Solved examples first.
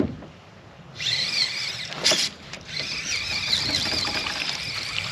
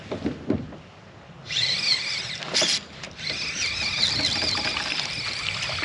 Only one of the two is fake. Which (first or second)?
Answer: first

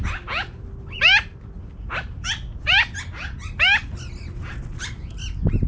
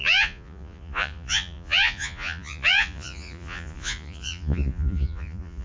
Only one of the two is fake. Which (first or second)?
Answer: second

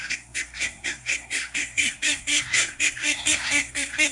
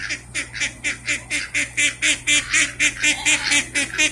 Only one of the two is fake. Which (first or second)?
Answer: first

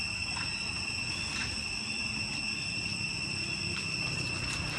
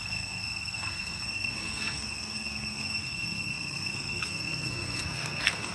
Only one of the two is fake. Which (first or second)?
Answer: second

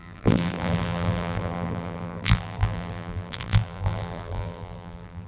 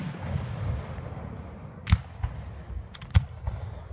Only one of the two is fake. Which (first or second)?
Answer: first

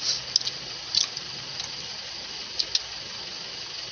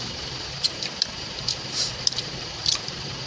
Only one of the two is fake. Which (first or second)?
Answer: second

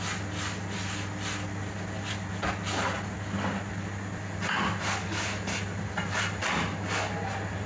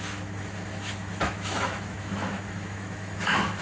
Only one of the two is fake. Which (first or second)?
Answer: second